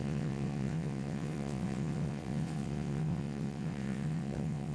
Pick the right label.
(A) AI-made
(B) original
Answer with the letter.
A